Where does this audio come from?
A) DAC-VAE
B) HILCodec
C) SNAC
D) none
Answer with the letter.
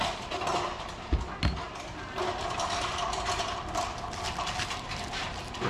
D